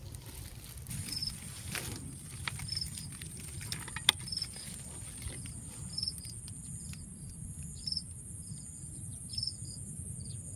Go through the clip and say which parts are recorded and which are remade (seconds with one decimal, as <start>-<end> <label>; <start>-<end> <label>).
0.0-10.6 recorded